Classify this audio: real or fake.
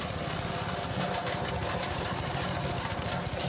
real